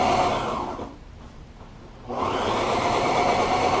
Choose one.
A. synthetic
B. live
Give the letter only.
B